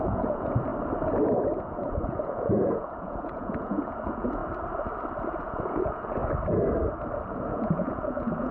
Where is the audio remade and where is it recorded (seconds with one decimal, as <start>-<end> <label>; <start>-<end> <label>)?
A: 0.0-0.7 remade; 0.7-1.6 recorded; 1.6-4.4 remade; 4.4-5.4 recorded; 5.4-6.2 remade; 6.2-7.3 recorded; 7.3-8.5 remade